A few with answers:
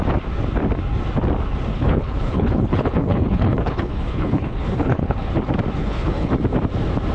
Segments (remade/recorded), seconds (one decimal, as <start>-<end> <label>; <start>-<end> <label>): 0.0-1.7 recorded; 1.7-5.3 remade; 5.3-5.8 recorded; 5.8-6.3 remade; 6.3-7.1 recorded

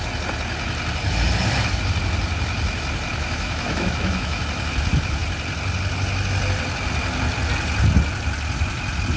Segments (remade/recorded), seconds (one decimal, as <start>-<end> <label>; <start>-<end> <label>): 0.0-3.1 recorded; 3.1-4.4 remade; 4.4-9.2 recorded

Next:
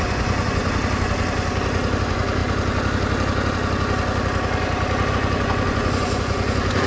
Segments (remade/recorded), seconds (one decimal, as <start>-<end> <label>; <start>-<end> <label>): 0.0-0.6 remade; 0.6-2.0 recorded; 2.0-2.4 remade; 2.4-5.1 recorded; 5.1-6.9 remade

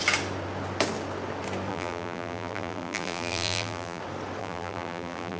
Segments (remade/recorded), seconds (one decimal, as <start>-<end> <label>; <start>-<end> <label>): 0.0-1.7 recorded; 1.7-4.0 remade; 4.0-4.4 recorded; 4.4-5.4 remade

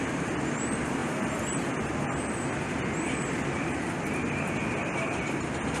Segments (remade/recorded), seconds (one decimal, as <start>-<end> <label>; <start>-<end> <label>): 0.0-5.8 recorded